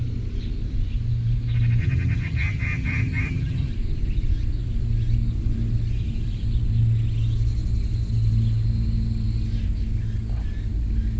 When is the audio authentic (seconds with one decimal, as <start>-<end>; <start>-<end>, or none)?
0.0-1.8; 3.7-11.2